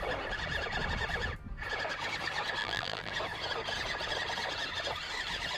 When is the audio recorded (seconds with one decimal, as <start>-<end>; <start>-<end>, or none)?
0.0-2.6; 3.1-5.6